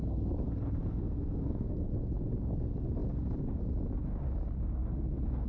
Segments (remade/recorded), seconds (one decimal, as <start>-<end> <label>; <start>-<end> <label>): 0.0-0.8 recorded; 0.8-1.9 remade; 1.9-5.5 recorded